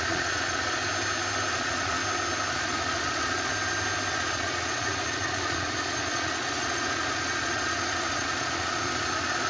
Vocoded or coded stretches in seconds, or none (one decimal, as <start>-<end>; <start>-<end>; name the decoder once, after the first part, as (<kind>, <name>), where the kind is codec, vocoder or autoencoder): 0.0-0.8 (vocoder, Vocos); 1.5-2.0; 2.5-3.5; 4.1-9.5